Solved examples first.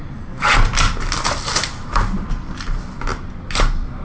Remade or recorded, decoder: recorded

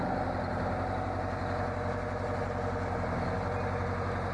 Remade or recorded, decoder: recorded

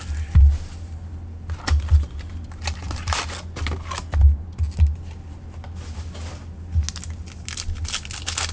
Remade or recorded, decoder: recorded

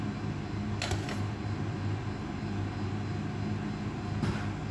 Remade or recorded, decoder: recorded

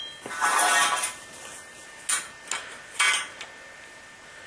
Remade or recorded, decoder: recorded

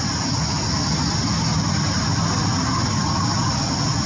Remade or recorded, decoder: recorded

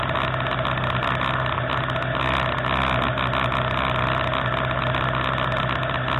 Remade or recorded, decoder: recorded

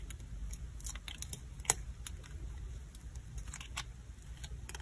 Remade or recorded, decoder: recorded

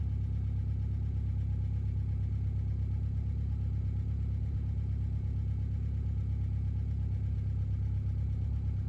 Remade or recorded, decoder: recorded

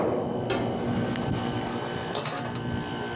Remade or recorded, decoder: recorded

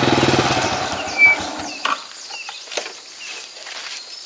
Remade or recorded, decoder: recorded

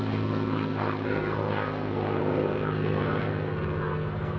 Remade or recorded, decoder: remade, codec, SNAC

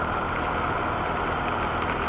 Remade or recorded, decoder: recorded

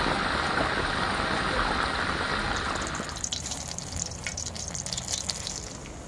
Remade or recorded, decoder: recorded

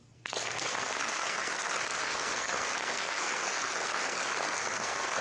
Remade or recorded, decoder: remade, codec, SNAC